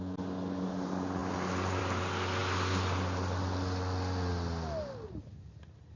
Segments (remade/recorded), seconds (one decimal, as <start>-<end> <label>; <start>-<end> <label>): 0.0-6.0 recorded